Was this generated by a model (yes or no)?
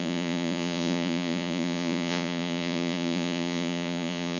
yes